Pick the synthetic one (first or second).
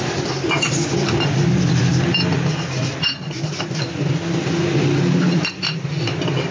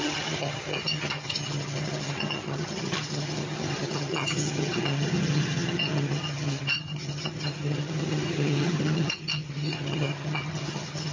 second